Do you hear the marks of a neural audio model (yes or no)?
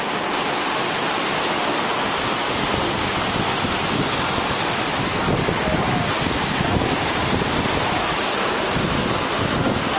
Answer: no